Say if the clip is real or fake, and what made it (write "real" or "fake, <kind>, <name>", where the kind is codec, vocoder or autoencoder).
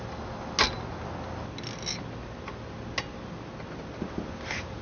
real